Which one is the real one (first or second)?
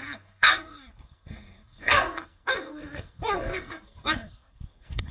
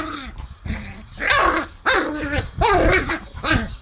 second